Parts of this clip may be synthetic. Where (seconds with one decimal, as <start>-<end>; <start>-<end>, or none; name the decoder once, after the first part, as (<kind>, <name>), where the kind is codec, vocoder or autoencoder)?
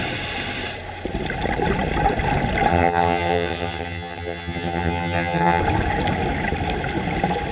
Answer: 2.7-5.6 (vocoder, HiFi-GAN)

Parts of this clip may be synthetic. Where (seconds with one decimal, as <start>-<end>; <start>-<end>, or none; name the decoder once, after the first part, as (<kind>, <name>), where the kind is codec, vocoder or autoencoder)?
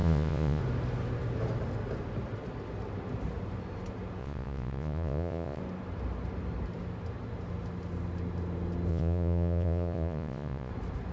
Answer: 0.0-0.6 (vocoder, Vocos); 4.2-5.6; 8.9-10.7